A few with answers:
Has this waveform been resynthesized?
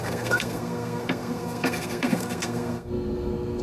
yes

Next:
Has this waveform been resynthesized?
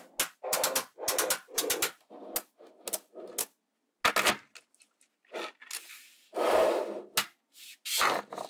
no